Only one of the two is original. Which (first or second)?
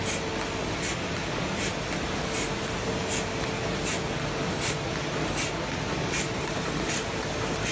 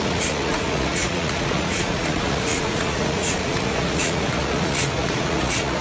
first